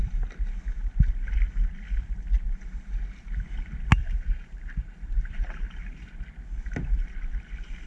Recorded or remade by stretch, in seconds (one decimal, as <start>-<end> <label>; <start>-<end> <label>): 0.0-4.0 recorded; 4.0-6.1 remade; 6.1-7.9 recorded